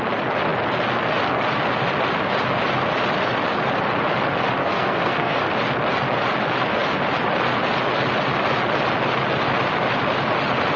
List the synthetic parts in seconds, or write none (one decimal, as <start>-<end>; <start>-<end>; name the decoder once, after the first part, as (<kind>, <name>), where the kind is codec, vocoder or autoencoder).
4.6-5.4 (codec, SNAC)